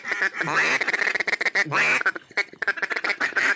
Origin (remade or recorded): recorded